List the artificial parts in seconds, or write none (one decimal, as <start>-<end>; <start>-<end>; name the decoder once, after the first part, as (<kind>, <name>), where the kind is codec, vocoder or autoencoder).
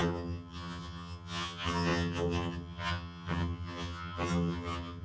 0.0-5.0 (vocoder, HiFi-GAN)